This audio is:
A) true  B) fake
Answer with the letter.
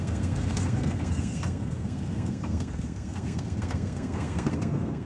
B